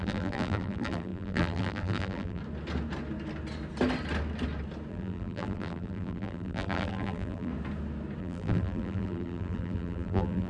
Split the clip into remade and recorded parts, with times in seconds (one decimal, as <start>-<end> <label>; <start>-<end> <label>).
0.0-2.4 remade; 2.4-4.9 recorded; 4.9-7.5 remade; 7.5-8.2 recorded; 8.2-10.5 remade